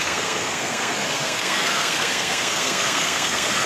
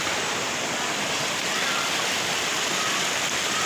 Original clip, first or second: second